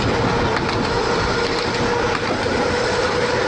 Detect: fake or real real